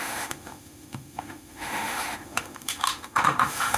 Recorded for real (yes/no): no